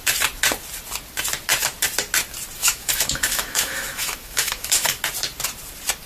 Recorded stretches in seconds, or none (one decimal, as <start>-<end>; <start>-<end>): 0.0-2.6; 5.0-6.1